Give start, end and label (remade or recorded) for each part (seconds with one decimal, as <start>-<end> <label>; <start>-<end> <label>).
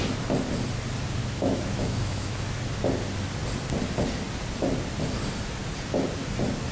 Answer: 0.0-1.2 recorded; 1.2-2.6 remade; 2.6-6.7 recorded